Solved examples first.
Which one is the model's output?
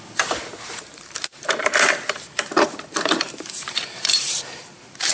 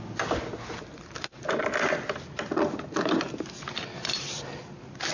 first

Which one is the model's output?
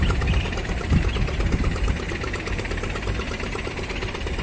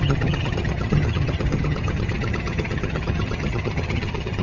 second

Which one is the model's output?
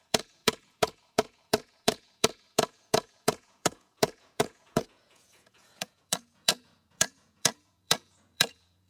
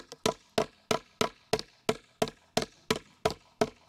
first